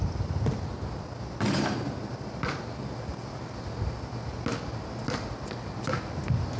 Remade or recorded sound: recorded